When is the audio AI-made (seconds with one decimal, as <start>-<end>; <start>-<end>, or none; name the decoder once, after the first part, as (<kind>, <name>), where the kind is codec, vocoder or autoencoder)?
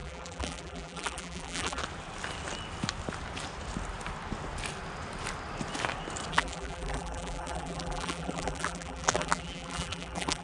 0.0-1.8 (vocoder, BigVGAN v2); 6.3-10.4